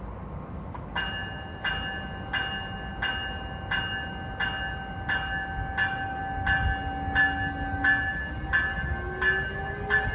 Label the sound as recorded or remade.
recorded